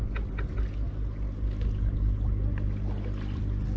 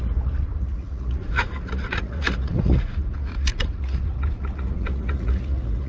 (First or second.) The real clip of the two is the first